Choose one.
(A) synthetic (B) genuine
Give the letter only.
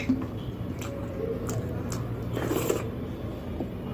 B